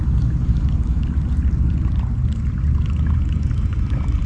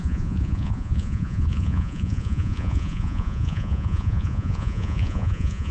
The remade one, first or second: second